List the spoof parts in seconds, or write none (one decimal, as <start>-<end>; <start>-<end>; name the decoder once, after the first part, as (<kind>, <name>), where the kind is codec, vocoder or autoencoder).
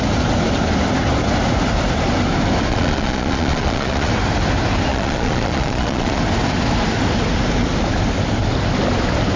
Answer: 2.7-4.1 (vocoder, Vocos); 4.9-6.2